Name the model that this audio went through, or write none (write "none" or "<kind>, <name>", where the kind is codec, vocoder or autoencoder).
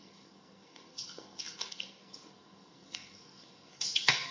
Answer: codec, SNAC